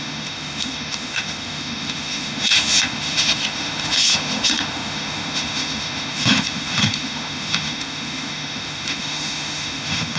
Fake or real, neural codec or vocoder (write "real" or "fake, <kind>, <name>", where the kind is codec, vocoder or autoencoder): fake, autoencoder, DAC-VAE